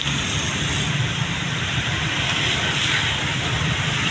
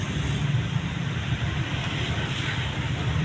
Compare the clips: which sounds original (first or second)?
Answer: second